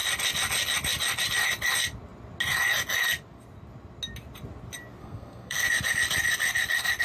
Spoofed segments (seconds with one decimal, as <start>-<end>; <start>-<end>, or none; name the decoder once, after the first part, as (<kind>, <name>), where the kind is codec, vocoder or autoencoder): 5.0-5.7 (codec, SNAC)